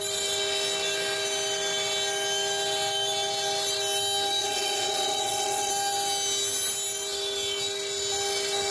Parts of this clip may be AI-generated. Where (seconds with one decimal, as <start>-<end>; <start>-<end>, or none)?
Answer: 4.4-5.7